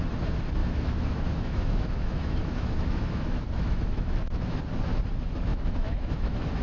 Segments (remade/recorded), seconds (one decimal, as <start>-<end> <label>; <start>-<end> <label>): 0.0-0.6 recorded; 0.6-4.6 remade; 4.6-5.5 recorded; 5.5-6.6 remade